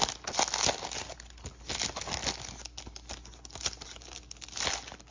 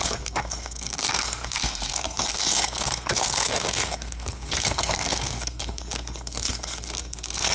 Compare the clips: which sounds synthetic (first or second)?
second